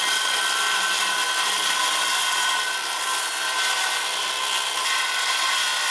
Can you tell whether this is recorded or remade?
recorded